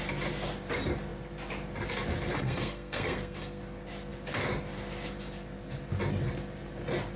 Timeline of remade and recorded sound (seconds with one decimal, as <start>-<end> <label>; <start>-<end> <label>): 0.0-2.4 recorded; 2.4-3.6 remade; 3.6-7.2 recorded